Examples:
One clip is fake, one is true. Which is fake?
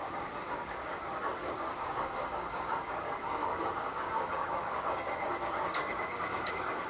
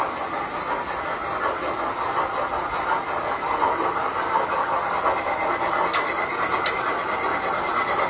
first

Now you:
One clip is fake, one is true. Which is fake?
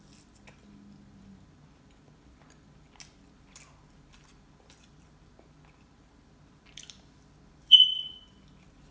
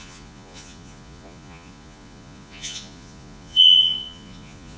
second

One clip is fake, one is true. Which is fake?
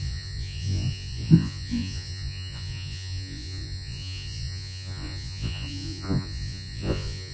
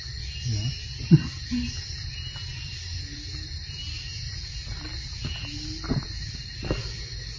first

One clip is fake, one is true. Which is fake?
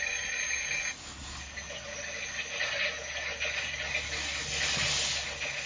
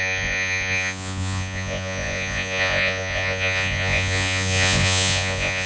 second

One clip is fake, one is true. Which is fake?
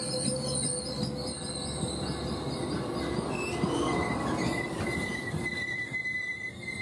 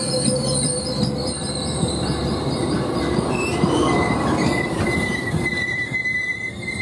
second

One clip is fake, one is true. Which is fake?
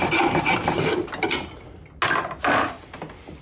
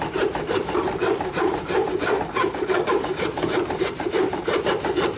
second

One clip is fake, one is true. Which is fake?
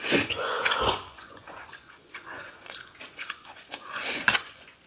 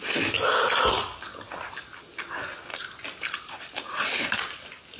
first